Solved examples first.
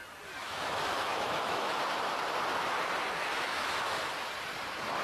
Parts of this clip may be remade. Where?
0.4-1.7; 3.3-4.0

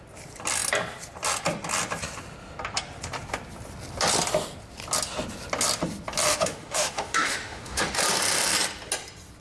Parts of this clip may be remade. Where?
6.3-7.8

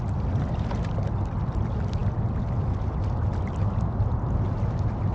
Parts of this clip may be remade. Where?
none

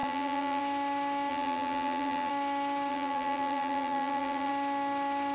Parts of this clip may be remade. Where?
0.0-0.6; 1.3-2.3; 2.9-4.5